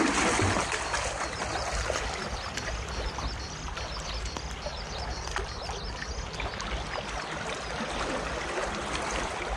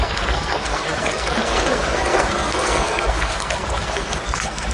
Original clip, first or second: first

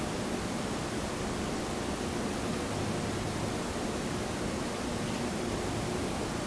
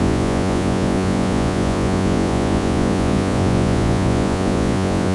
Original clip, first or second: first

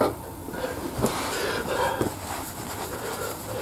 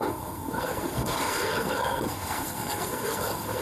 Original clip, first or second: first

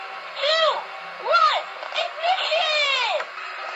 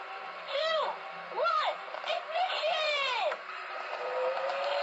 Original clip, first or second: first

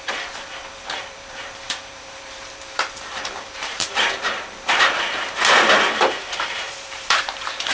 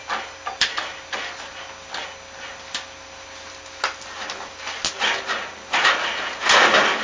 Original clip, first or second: second